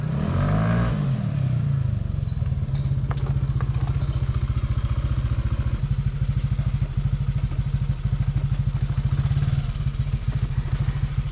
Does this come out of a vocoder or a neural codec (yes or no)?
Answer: no